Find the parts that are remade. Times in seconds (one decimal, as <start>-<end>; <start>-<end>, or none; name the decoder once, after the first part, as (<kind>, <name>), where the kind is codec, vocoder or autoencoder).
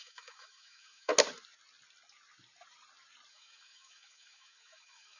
0.0-1.1 (autoencoder, DAC-VAE); 3.3-5.2